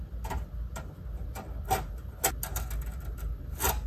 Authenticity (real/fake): real